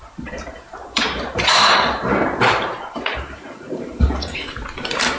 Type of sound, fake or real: fake